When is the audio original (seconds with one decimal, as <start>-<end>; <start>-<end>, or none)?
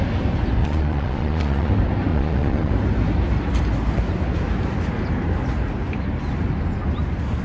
0.0-0.6; 1.7-2.1; 2.7-7.4